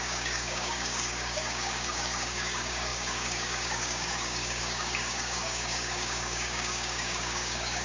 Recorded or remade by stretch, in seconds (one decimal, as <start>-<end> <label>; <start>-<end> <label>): 0.0-7.8 remade